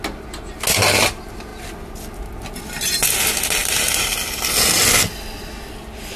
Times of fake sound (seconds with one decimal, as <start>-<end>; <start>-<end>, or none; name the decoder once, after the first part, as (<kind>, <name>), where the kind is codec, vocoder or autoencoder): none